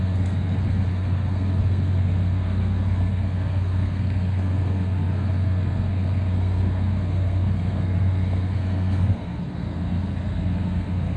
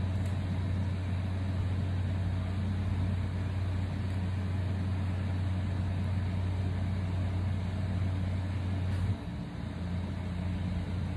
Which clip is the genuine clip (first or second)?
second